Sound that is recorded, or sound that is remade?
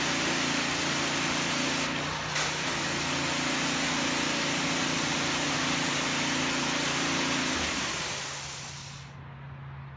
recorded